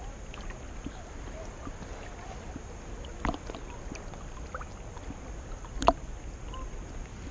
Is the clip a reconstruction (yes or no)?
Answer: no